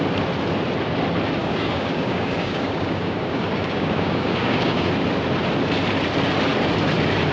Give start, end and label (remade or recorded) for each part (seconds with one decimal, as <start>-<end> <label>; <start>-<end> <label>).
0.0-1.4 recorded; 1.4-4.9 remade; 4.9-7.3 recorded